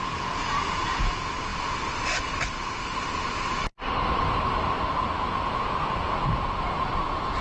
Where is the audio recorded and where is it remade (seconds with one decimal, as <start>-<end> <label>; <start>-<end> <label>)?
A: 0.0-1.5 remade; 1.5-5.2 recorded; 5.2-7.4 remade